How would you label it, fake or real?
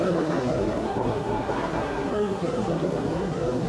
fake